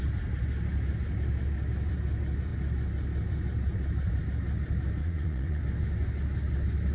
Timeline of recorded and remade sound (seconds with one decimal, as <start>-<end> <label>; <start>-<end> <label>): 0.0-5.0 recorded; 5.0-5.6 remade; 5.6-6.9 recorded